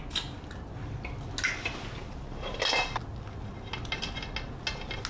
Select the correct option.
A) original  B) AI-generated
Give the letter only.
A